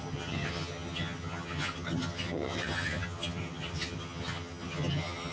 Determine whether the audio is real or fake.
fake